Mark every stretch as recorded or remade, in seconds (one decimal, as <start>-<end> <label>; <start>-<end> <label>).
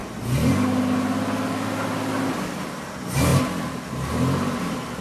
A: 0.0-5.0 recorded